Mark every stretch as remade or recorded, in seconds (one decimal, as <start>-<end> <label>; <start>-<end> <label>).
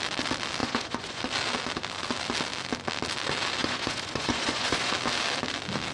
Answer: 0.0-0.6 recorded; 0.6-1.2 remade; 1.2-3.6 recorded; 3.6-4.9 remade; 4.9-5.9 recorded